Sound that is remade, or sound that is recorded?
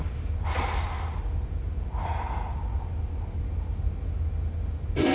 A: recorded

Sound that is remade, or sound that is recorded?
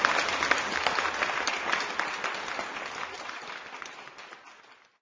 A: recorded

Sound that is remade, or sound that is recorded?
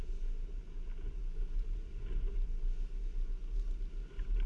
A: recorded